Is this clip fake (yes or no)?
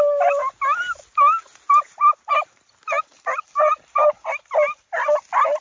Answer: no